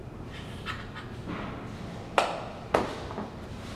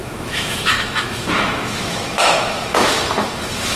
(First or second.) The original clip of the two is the first